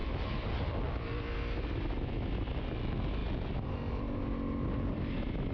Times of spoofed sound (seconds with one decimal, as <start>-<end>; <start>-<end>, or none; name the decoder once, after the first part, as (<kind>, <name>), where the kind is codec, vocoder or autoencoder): none